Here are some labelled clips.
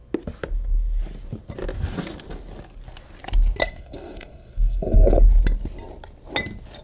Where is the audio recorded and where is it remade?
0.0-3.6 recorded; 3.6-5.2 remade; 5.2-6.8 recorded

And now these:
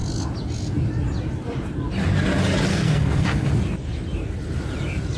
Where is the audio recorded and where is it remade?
0.0-2.7 recorded; 2.7-3.5 remade; 3.5-5.2 recorded

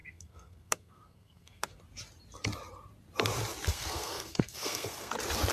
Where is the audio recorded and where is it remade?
0.0-1.8 remade; 1.8-3.7 recorded; 3.7-5.1 remade; 5.1-5.5 recorded

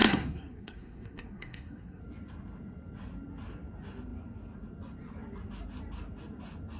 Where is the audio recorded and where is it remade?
0.0-2.0 remade; 2.0-6.8 recorded